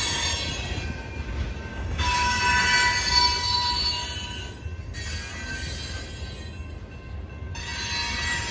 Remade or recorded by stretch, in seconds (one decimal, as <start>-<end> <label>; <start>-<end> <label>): 0.0-1.7 recorded; 1.7-2.4 remade; 2.4-8.5 recorded

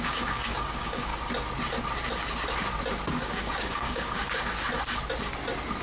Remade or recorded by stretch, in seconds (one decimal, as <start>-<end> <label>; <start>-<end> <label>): 0.0-1.1 remade; 1.1-3.1 recorded; 3.1-4.2 remade; 4.2-5.8 recorded

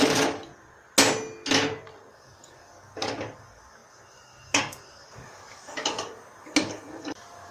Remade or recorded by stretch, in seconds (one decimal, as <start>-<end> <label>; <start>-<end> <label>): 0.0-0.5 remade; 0.5-2.1 recorded; 2.1-7.5 remade